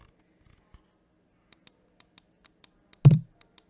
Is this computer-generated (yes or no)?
no